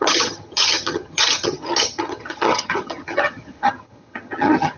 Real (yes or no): no